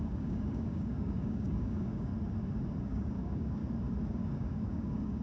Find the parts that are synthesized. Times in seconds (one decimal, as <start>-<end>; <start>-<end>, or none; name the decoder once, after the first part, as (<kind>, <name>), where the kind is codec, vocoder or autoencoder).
0.0-2.1 (codec, DAC); 2.8-3.6; 4.1-5.2